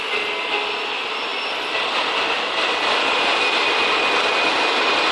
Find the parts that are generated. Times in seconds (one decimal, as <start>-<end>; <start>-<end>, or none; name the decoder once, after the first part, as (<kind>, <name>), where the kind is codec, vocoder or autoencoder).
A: none